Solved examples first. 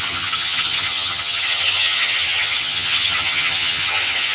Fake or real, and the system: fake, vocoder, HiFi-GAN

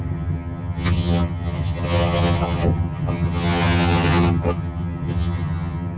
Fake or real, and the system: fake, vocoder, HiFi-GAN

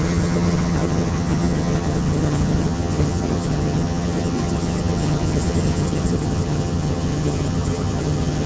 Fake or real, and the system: fake, vocoder, HiFi-GAN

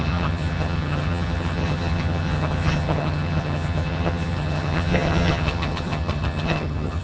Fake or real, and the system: fake, vocoder, HiFi-GAN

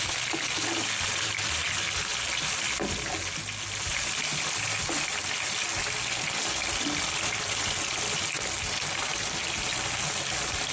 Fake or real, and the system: real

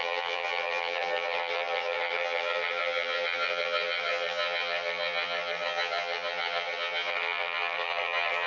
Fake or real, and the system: fake, vocoder, HiFi-GAN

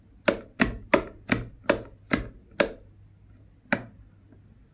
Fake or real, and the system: real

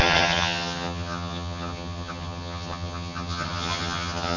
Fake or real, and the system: fake, vocoder, HiFi-GAN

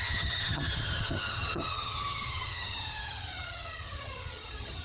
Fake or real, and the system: fake, vocoder, HiFi-GAN